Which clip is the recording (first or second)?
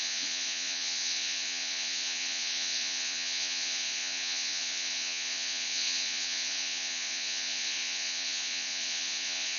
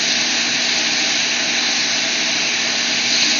second